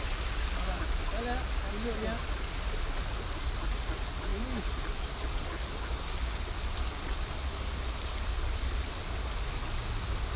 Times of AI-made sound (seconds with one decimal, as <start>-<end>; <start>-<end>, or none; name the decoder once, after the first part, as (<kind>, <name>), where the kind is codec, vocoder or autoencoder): none